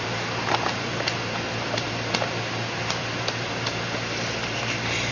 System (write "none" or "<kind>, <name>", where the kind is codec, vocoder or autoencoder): vocoder, BigVGAN v2